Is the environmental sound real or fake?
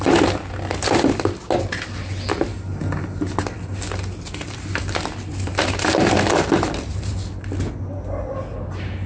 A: real